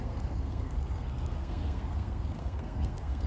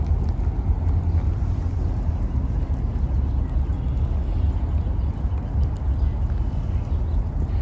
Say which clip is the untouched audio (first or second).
second